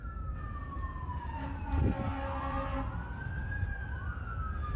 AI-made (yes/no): no